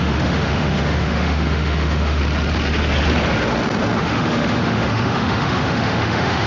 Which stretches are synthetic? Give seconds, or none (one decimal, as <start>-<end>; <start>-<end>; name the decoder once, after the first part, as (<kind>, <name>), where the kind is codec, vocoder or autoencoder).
0.0-2.2 (autoencoder, DAC-VAE); 4.0-6.5